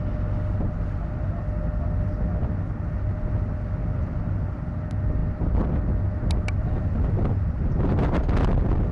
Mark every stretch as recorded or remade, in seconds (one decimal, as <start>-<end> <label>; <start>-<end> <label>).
0.0-8.9 recorded